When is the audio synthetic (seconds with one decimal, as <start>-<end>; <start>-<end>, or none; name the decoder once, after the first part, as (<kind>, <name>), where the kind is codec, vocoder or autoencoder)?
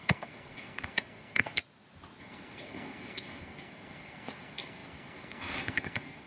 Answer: 0.0-1.6 (codec, SNAC); 2.2-6.3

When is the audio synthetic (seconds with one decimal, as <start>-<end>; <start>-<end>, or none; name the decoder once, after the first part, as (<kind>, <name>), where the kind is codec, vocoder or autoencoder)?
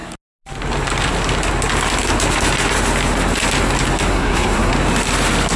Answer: 4.1-4.7 (codec, SNAC)